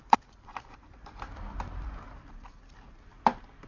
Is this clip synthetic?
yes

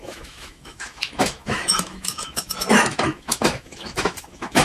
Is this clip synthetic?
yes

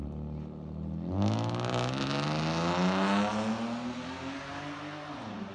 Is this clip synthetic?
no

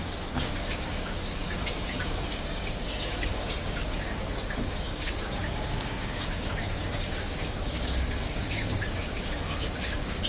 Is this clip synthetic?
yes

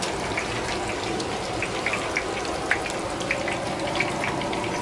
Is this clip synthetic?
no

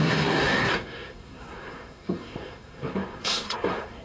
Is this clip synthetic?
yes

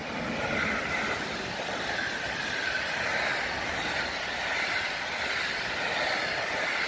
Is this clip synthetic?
no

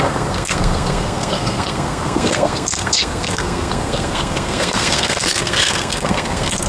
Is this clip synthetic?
yes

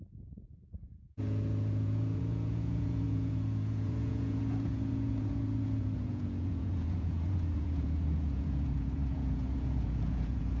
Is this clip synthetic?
yes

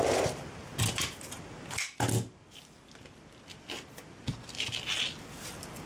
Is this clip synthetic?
no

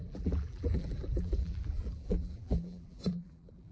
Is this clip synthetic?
yes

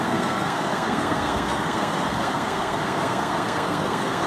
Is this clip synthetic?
yes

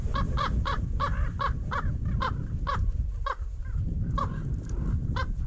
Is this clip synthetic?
yes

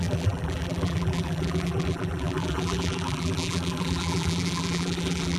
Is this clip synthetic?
yes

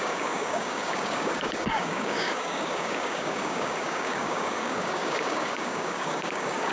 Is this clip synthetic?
yes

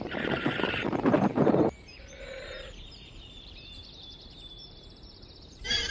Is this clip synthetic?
yes